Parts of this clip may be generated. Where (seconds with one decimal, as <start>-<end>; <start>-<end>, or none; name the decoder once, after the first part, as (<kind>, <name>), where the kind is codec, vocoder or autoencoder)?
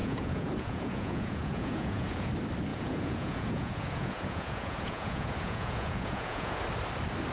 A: 0.0-2.3 (vocoder, Vocos); 2.7-6.6